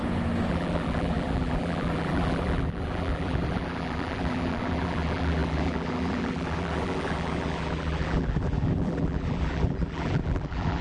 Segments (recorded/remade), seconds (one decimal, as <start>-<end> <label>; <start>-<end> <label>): 0.0-0.5 recorded; 0.5-10.8 remade